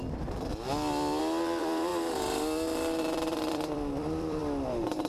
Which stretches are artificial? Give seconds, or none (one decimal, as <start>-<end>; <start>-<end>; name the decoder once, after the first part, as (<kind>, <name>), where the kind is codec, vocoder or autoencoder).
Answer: 0.0-0.5 (vocoder, BigVGAN v2); 1.2-1.9; 3.0-5.1